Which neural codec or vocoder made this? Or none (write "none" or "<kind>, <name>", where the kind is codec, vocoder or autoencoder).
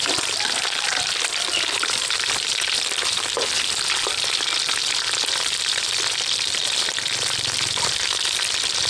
vocoder, BigVGAN v2